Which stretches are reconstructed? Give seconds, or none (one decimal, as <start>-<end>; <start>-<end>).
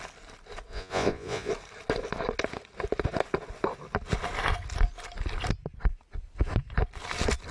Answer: 0.7-1.5